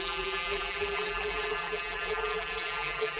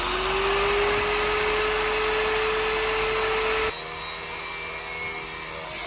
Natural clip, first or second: second